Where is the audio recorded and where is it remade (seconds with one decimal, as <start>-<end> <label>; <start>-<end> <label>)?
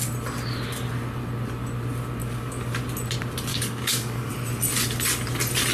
0.0-2.2 recorded; 2.2-2.8 remade; 2.8-3.5 recorded; 3.5-4.3 remade; 4.3-5.7 recorded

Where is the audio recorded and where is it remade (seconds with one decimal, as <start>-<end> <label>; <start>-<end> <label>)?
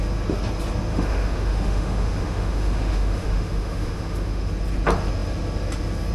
0.0-0.9 recorded; 0.9-4.5 remade; 4.5-6.1 recorded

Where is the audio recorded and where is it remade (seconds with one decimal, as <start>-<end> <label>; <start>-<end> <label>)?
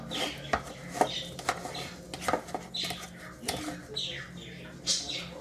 0.0-5.4 recorded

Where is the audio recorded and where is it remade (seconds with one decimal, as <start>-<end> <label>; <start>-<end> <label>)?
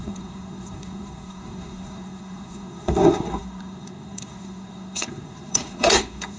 0.0-6.4 remade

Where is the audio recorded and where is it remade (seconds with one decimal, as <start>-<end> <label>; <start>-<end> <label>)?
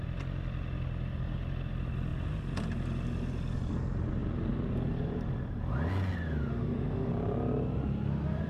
0.0-6.5 recorded; 6.5-7.1 remade; 7.1-8.5 recorded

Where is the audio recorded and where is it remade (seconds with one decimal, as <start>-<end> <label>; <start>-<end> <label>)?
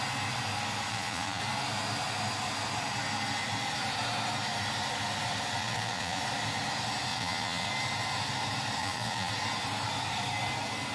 0.0-0.9 recorded; 0.9-1.4 remade; 1.4-5.6 recorded; 5.6-6.2 remade; 6.2-7.1 recorded; 7.1-7.7 remade; 7.7-8.8 recorded; 8.8-9.3 remade; 9.3-10.9 recorded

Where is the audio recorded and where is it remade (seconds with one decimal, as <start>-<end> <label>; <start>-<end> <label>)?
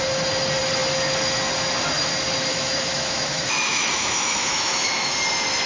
0.0-2.5 recorded; 2.5-5.1 remade; 5.1-5.7 recorded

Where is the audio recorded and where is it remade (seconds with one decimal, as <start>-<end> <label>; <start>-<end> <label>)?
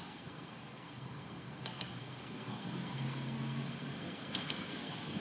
0.0-5.2 remade